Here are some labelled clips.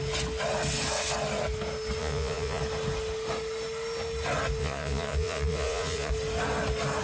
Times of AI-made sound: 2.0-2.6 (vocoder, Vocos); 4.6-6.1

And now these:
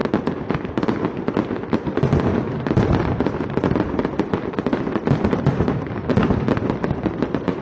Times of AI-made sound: none

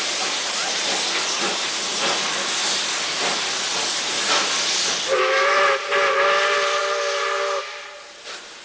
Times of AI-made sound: none

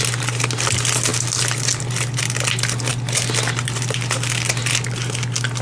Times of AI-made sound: none

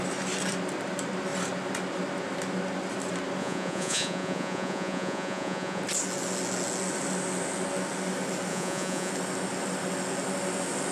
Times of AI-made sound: 3.4-5.8 (vocoder, Vocos); 8.5-9.1

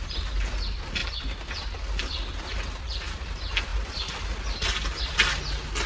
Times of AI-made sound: none

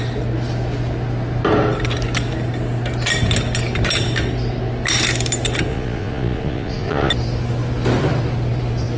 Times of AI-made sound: 5.7-7.1 (vocoder, Vocos)